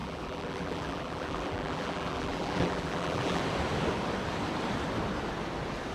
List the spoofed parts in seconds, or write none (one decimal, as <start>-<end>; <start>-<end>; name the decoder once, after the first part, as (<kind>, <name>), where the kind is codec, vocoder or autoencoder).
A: 0.0-3.4 (vocoder, BigVGAN v2)